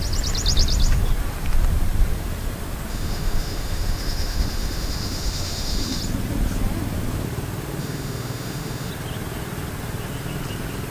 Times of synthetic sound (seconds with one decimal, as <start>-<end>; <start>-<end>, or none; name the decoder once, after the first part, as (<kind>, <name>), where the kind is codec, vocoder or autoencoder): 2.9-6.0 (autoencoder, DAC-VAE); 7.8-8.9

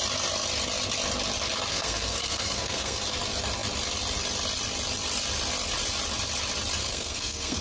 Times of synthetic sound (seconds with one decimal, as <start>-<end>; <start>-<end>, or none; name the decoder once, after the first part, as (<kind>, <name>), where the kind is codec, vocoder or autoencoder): 1.7-3.0 (codec, SNAC); 6.8-7.6

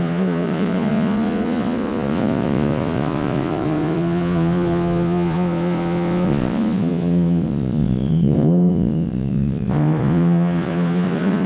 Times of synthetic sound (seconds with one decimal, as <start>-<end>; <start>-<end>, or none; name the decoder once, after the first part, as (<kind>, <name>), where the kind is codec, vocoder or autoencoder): 0.0-11.5 (vocoder, Vocos)

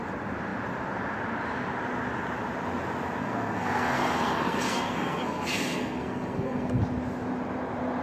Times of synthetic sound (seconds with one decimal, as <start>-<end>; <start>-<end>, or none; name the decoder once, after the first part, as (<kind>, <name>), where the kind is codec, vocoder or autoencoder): 3.2-6.8 (codec, SNAC)

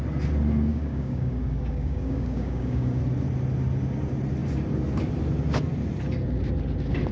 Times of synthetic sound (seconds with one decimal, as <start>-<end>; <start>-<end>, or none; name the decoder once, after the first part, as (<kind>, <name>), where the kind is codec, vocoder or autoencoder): 0.7-3.0 (codec, DAC)

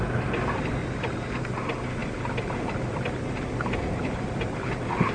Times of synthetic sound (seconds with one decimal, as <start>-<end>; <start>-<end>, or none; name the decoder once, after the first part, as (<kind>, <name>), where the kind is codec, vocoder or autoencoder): 0.8-1.4 (vocoder, BigVGAN v2); 2.0-5.1

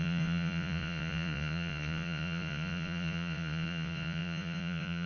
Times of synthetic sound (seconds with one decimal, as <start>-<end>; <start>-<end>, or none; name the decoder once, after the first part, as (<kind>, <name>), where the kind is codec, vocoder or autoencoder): 0.0-5.1 (vocoder, Vocos)

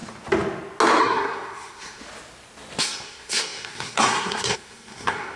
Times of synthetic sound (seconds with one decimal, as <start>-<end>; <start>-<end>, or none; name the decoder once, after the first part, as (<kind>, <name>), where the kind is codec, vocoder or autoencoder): 1.0-2.0 (codec, SNAC); 2.8-5.4